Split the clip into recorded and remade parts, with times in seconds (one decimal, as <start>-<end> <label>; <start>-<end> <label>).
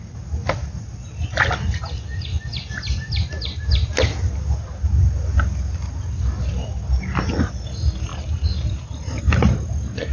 0.0-10.1 recorded